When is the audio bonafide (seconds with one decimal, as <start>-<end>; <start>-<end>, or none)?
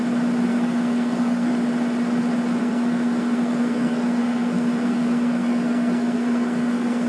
0.0-0.5; 1.5-2.6